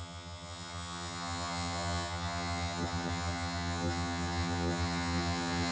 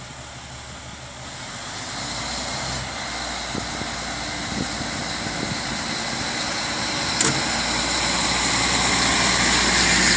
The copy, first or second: first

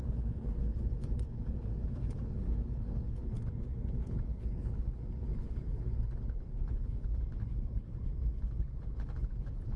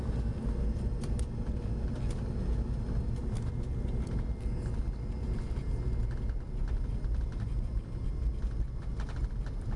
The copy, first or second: first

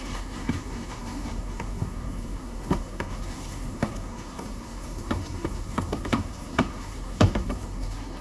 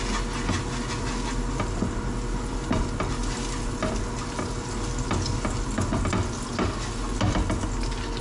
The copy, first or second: first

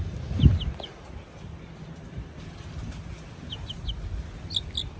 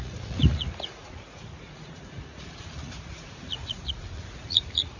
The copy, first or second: second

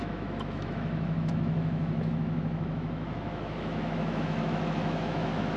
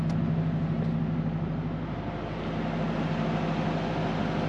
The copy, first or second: first